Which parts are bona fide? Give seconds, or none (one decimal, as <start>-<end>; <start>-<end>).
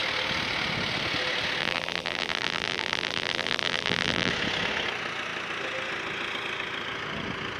0.0-1.6; 4.3-7.6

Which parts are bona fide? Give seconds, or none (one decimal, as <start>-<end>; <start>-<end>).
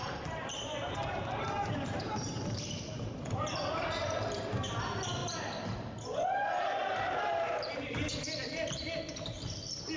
5.2-6.6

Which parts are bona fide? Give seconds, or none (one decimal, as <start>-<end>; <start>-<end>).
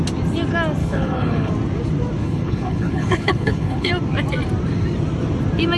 0.0-0.8; 1.5-2.2; 3.9-5.8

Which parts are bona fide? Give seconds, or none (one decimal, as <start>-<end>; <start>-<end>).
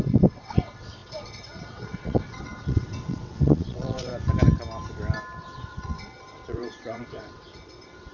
4.1-5.4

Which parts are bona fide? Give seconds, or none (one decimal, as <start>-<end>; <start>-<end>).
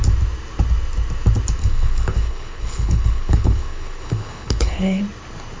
0.0-1.6; 5.0-5.6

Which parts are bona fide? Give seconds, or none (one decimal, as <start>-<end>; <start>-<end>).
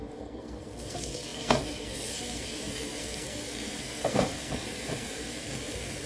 none